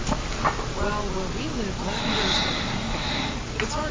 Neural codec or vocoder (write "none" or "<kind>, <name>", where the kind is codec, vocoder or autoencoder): none